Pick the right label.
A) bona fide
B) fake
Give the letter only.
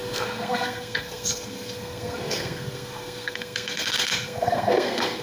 B